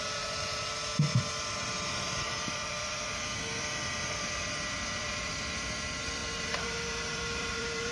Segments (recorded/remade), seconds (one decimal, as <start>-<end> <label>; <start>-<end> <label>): 0.0-0.9 remade; 0.9-1.8 recorded; 1.8-3.1 remade; 3.1-4.1 recorded; 4.1-7.9 remade